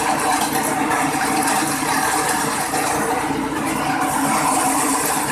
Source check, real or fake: real